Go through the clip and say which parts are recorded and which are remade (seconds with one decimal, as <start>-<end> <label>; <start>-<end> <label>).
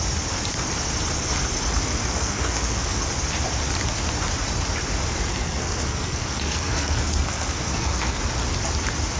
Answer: 0.0-2.0 recorded; 2.0-3.0 remade; 3.0-5.3 recorded; 5.3-8.2 remade; 8.2-9.2 recorded